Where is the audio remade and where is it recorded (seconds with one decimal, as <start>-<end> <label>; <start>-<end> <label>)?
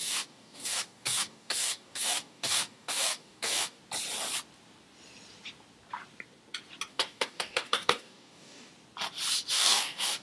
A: 0.0-3.8 remade; 3.8-6.9 recorded; 6.9-8.7 remade; 8.7-9.5 recorded; 9.5-10.2 remade